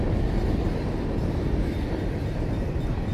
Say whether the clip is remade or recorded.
recorded